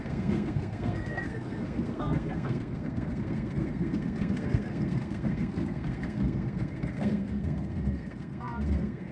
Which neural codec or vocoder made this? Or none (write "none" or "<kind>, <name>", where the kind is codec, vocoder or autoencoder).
codec, SNAC